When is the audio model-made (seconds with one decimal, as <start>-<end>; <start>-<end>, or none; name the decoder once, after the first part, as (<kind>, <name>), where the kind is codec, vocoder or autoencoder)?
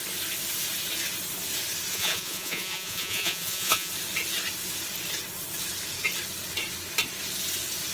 1.9-3.9 (vocoder, Vocos)